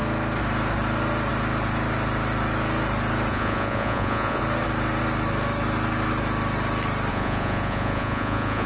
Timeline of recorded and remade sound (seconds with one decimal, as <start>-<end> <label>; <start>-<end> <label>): 0.0-3.3 recorded; 3.3-4.4 remade; 4.4-7.1 recorded; 7.1-8.7 remade

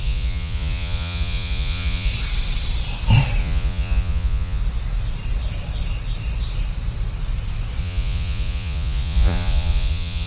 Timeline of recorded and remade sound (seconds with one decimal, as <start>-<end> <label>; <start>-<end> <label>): 0.0-2.1 remade; 2.1-3.4 recorded; 3.4-4.6 remade; 4.6-7.8 recorded; 7.8-10.3 remade

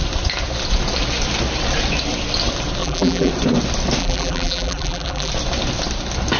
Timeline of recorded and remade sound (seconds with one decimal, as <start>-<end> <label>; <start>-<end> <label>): 0.0-2.8 recorded; 2.8-3.3 remade; 3.3-4.0 recorded; 4.0-5.3 remade; 5.3-6.4 recorded

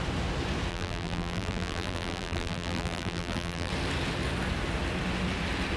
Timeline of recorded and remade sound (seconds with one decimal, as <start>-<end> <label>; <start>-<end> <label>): 0.0-0.7 recorded; 0.7-3.7 remade; 3.7-5.8 recorded

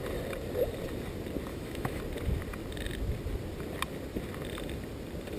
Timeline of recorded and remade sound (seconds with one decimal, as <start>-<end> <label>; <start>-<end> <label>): 0.0-1.5 recorded; 1.5-2.0 remade; 2.0-5.4 recorded

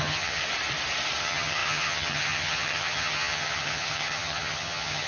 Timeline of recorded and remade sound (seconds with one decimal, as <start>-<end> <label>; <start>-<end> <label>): 0.0-0.4 remade; 0.4-1.2 recorded; 1.2-5.1 remade

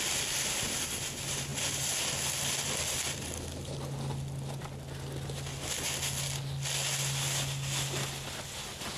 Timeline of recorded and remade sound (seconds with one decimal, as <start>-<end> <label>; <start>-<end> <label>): 0.0-9.0 recorded

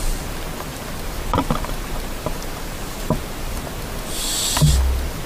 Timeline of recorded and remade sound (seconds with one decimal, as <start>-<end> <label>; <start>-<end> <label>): 0.0-0.7 recorded; 0.7-3.8 remade; 3.8-5.3 recorded